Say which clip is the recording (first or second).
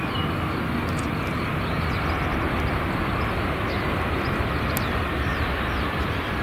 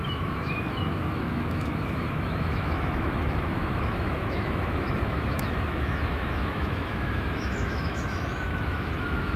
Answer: first